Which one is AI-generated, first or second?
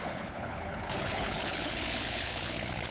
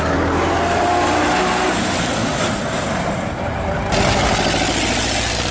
first